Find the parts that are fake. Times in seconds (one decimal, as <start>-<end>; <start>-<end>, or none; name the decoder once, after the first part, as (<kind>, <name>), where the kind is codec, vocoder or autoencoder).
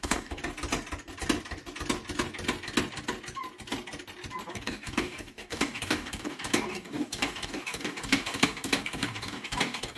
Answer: 0.0-0.4 (codec, DAC); 4.5-10.0